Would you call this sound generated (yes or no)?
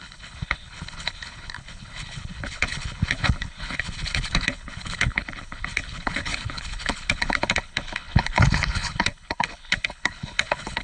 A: yes